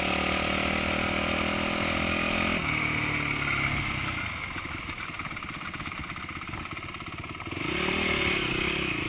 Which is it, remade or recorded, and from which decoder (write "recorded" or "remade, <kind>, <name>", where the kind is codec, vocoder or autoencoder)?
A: recorded